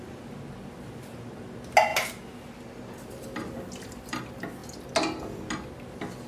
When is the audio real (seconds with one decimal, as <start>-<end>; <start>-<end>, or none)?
0.0-6.3